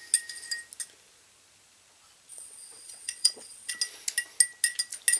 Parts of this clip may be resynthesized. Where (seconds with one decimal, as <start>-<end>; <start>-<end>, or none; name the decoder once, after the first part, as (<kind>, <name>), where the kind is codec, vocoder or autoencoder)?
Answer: 2.3-3.7 (vocoder, WaveNeXt)

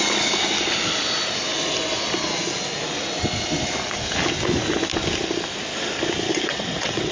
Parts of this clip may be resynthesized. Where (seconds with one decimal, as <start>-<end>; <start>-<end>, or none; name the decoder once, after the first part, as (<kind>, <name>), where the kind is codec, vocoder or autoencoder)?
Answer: 6.3-7.1 (vocoder, WaveNeXt)

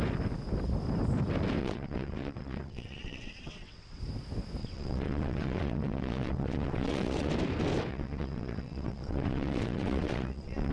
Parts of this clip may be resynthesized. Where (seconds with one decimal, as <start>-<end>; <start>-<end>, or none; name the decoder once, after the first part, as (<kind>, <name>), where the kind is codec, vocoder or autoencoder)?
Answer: 1.6-4.0 (vocoder, WaveNeXt); 4.6-7.3; 7.9-10.7

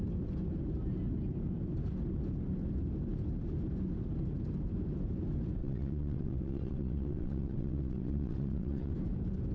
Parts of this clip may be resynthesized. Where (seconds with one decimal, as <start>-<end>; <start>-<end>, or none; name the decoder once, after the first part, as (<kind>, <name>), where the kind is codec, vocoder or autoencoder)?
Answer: 5.6-8.9 (vocoder, WaveNeXt)

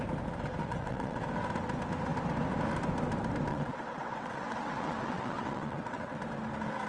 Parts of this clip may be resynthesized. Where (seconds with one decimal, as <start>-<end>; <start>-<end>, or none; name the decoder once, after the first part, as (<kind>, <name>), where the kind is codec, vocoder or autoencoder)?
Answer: 0.6-1.2 (vocoder, WaveNeXt); 3.5-6.2

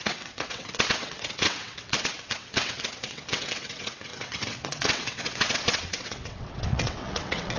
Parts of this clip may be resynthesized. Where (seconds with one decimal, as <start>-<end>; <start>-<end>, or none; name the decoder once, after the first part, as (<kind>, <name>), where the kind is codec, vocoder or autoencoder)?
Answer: 0.0-7.6 (vocoder, WaveNeXt)